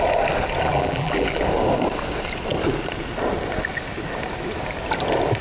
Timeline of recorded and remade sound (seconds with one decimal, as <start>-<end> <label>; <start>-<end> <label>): 0.0-0.7 recorded; 0.7-1.4 remade; 1.4-5.4 recorded